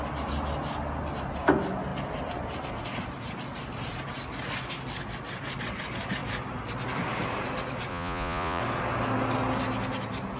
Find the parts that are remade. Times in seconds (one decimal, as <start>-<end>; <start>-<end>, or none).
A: 7.9-8.6